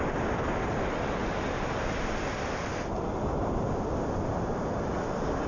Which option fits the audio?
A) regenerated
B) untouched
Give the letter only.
B